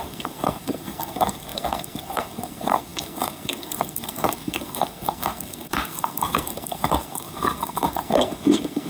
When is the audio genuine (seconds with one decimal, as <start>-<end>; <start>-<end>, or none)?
none